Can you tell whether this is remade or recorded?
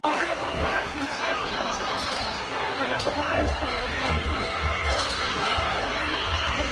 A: remade